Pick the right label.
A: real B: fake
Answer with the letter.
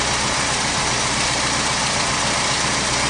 A